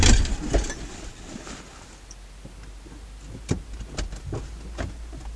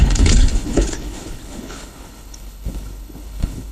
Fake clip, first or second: second